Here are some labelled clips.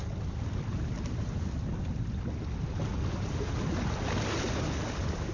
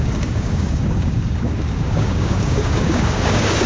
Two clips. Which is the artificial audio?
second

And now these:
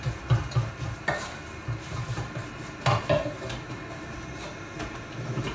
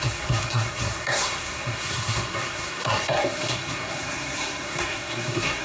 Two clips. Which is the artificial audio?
second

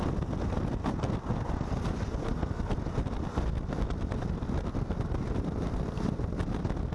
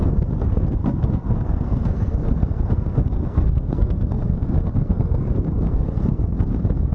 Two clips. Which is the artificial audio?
second